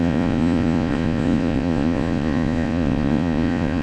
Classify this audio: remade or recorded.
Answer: remade